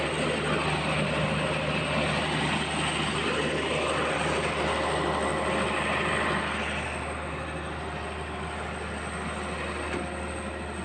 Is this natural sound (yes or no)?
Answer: yes